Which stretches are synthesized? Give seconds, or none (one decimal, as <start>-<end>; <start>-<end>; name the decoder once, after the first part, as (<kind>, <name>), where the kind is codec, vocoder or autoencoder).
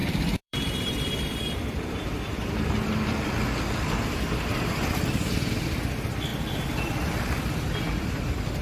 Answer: 0.0-4.7 (vocoder, BigVGAN v2)